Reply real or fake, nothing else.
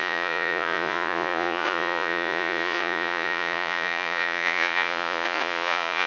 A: fake